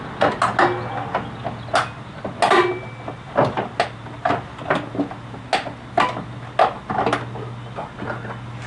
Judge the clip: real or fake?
real